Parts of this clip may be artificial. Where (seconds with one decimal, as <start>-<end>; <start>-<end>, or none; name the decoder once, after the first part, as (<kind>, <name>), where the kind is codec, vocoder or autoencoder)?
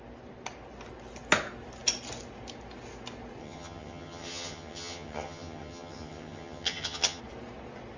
3.4-7.2 (vocoder, HiFi-GAN)